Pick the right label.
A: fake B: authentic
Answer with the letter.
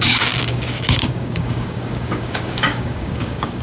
A